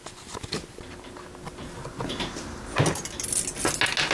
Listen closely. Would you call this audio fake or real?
real